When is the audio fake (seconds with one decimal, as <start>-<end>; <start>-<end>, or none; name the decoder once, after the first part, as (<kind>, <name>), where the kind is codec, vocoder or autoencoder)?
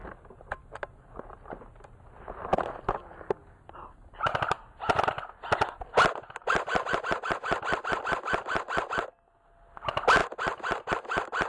none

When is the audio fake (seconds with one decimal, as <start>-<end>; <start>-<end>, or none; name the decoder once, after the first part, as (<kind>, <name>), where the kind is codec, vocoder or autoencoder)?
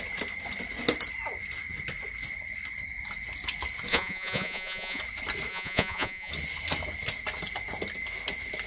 3.9-5.0 (vocoder, Vocos); 5.5-6.3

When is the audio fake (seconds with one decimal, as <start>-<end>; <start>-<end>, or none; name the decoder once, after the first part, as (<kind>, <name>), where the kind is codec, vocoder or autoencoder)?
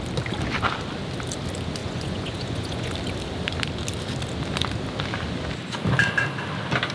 1.8-2.9 (vocoder, Vocos)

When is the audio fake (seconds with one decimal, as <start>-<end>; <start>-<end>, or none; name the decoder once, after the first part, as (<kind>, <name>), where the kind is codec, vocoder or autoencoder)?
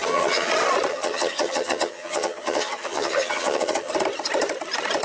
0.0-0.5 (vocoder, HiFi-GAN); 0.9-3.9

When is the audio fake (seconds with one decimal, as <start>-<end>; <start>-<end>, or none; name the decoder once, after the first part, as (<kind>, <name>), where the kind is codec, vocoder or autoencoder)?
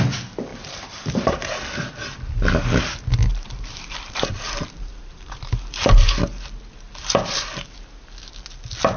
0.5-1.3 (vocoder, BigVGAN v2); 3.3-5.5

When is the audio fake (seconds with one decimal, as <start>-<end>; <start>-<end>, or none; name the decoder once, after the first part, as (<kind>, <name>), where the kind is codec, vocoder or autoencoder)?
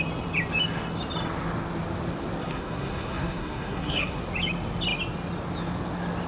2.4-4.2 (codec, SNAC)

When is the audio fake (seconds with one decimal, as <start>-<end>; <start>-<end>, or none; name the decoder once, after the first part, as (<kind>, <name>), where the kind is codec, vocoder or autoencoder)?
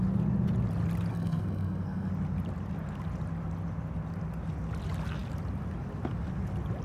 1.1-2.1 (codec, SNAC)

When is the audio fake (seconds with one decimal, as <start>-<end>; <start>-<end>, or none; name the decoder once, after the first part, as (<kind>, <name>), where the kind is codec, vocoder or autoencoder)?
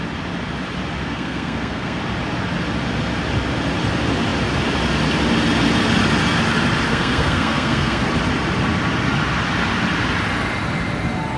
1.0-2.0 (codec, SNAC); 6.9-8.1